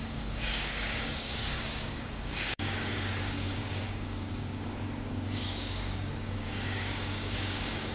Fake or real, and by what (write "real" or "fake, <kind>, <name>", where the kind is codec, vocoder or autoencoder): fake, codec, DAC